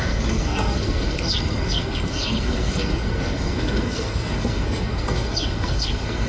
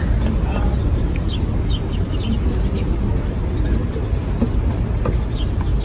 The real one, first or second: second